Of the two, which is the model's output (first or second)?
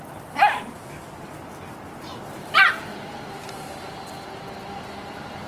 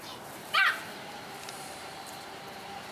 second